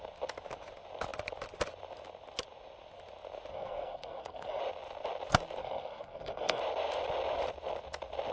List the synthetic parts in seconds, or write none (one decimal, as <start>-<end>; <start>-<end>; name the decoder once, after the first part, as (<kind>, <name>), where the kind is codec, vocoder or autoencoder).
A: 3.5-4.6 (codec, SNAC); 5.6-6.6